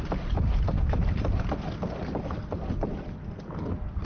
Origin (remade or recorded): recorded